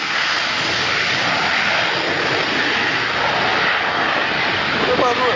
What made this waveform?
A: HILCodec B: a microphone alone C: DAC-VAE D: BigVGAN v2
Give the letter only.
B